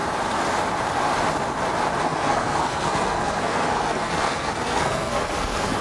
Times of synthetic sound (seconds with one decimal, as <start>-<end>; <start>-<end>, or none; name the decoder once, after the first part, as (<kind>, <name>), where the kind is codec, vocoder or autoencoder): 2.0-5.8 (codec, SNAC)